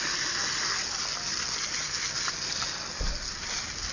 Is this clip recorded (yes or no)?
yes